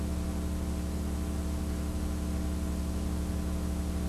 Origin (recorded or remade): recorded